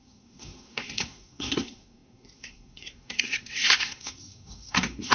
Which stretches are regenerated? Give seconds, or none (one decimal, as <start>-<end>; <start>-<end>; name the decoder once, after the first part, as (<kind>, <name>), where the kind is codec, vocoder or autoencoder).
0.0-5.1 (codec, SNAC)